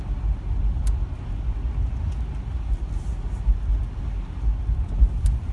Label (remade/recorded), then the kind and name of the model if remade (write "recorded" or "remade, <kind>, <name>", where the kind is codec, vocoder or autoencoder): recorded